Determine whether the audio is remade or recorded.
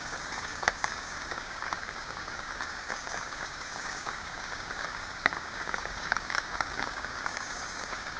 remade